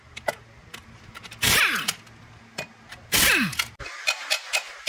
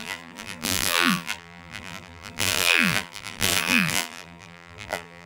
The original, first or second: first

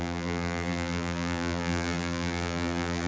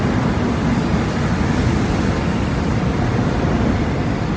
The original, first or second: second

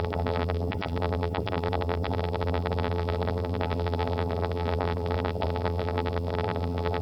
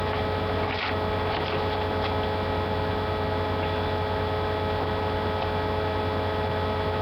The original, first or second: second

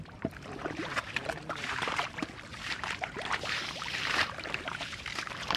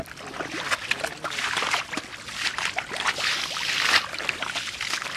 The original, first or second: second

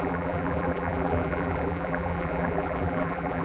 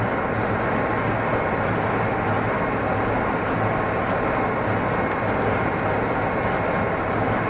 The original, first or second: second